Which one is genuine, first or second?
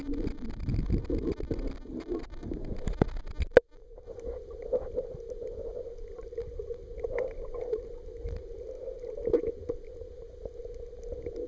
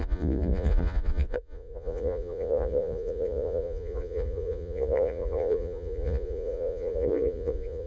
first